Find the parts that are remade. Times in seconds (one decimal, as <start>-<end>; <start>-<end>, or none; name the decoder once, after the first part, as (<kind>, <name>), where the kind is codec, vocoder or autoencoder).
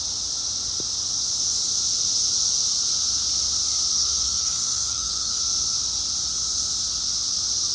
3.9-5.4 (codec, DAC)